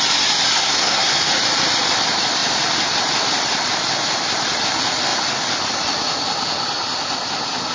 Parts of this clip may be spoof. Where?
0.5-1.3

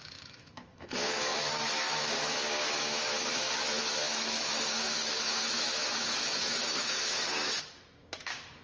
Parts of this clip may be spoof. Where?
0.0-8.6

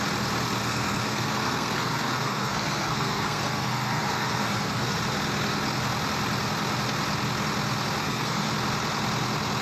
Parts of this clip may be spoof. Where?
0.6-5.0; 8.0-8.5

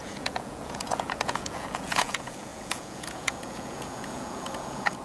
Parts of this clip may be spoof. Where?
0.0-5.0

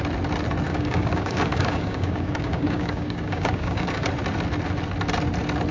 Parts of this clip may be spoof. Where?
0.7-4.1

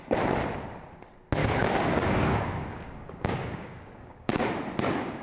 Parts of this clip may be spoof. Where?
1.4-4.5